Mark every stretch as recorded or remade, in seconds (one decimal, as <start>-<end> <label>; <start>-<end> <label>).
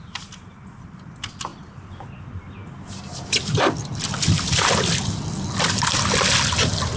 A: 0.0-7.0 recorded